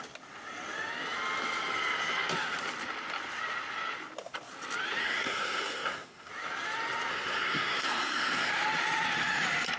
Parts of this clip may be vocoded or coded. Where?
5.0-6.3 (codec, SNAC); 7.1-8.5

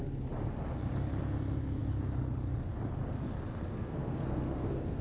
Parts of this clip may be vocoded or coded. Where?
3.7-5.0 (codec, SNAC)

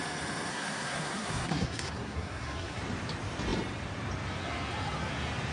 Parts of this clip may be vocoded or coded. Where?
0.5-2.8 (codec, SNAC)

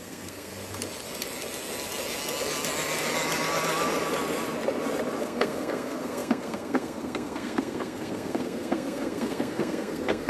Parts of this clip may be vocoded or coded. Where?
0.0-0.5 (codec, SNAC); 5.2-10.3

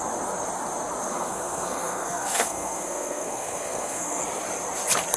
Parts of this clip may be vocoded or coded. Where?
1.1-4.2 (codec, SNAC)

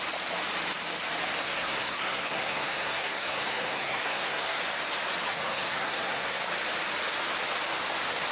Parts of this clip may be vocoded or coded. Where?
1.4-4.6 (codec, SNAC); 5.3-6.4